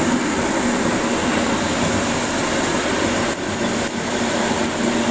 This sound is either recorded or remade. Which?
recorded